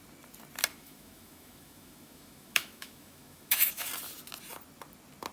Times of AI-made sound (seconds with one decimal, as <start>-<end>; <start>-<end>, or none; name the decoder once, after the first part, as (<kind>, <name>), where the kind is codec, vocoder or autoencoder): 0.7-3.9 (autoencoder, DAC-VAE)